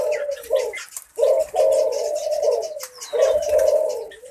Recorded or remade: recorded